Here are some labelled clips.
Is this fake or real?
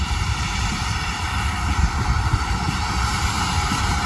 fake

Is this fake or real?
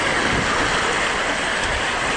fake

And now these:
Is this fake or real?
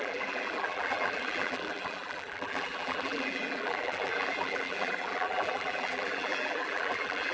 fake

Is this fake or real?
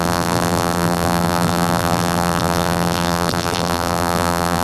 fake